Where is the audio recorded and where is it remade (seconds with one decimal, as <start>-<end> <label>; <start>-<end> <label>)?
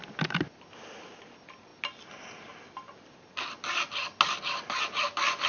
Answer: 0.0-5.5 recorded